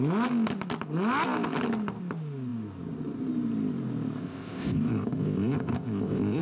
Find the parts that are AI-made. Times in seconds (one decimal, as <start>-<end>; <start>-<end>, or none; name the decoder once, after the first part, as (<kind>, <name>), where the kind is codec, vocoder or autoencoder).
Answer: 4.2-6.4 (codec, ZipCodec)